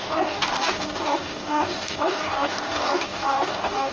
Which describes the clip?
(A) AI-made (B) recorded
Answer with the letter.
A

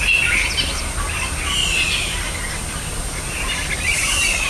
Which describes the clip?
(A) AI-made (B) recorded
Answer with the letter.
B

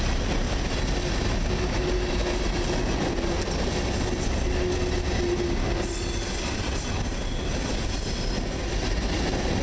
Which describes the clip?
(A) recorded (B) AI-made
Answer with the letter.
A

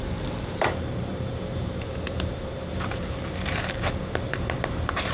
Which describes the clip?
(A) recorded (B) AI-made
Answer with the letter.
B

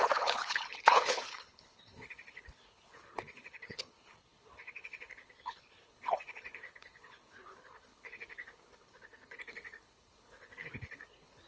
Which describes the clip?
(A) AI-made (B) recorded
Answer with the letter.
A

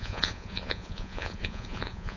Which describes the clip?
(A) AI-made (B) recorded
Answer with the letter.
A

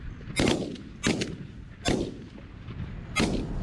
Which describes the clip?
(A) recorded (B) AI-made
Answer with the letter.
A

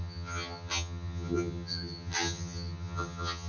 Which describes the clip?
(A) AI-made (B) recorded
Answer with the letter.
A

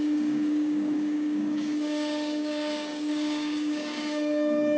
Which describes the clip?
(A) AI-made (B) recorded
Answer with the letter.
A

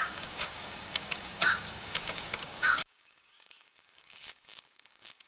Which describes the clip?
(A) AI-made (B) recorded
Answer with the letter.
A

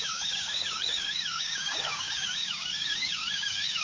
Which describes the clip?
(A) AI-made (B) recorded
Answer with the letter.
A